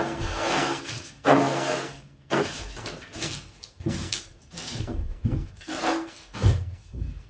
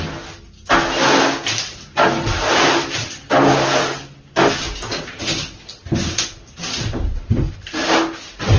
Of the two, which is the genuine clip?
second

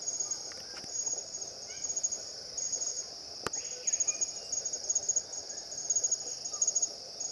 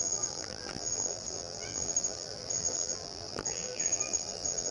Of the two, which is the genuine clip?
first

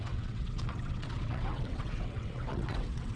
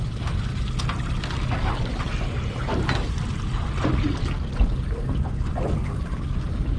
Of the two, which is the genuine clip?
second